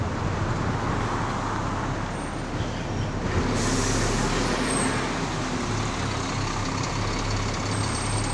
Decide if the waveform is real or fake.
real